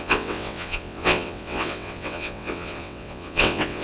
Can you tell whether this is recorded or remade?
remade